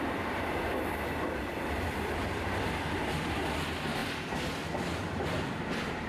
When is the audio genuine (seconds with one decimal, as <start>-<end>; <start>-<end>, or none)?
0.0-6.1